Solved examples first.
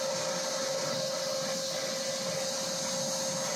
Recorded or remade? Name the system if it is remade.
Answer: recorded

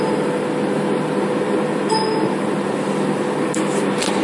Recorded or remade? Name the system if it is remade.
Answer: remade, vocoder, BigVGAN v2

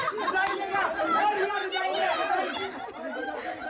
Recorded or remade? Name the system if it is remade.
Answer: remade, vocoder, BigVGAN v2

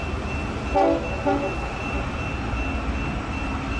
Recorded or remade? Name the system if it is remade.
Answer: recorded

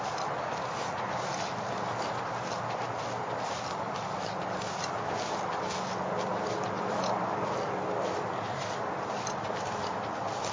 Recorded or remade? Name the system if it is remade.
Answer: recorded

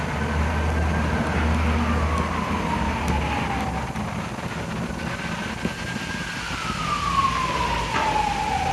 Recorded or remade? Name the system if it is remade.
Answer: recorded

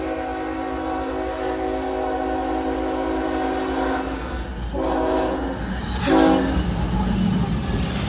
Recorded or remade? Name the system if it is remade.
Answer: recorded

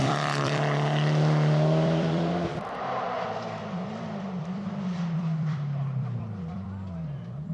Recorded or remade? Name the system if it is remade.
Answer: remade, vocoder, BigVGAN v2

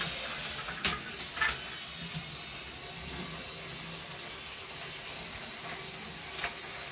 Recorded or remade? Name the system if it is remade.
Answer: recorded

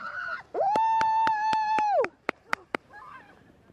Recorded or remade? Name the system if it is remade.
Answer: remade, vocoder, BigVGAN v2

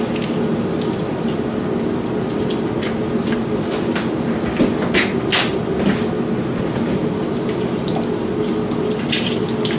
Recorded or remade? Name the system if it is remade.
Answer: recorded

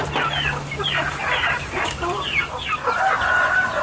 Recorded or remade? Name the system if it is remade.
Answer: recorded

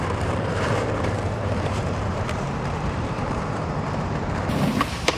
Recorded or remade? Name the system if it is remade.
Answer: remade, vocoder, BigVGAN v2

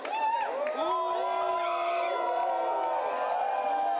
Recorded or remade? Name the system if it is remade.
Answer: recorded